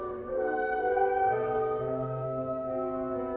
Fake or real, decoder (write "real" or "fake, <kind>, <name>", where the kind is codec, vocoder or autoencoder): fake, codec, DAC